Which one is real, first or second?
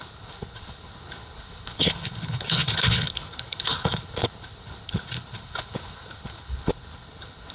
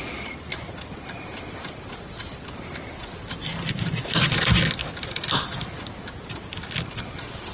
second